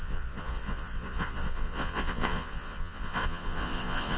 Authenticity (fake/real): fake